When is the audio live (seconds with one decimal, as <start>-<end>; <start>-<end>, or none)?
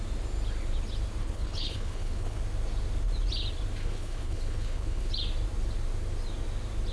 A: 0.0-1.2; 2.4-3.8; 5.1-6.9